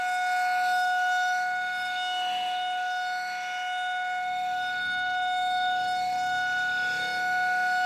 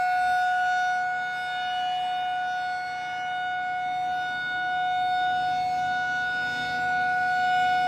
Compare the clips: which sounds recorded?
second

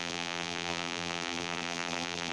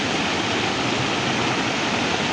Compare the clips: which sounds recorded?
second